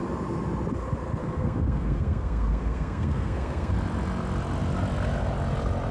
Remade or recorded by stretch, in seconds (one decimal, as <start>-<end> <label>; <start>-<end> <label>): 0.0-1.2 recorded; 1.2-3.7 remade; 3.7-5.9 recorded